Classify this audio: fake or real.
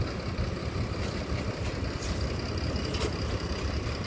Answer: real